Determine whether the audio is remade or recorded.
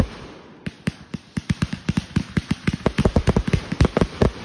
recorded